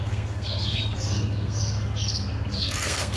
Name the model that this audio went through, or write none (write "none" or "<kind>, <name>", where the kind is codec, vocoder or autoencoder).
codec, SNAC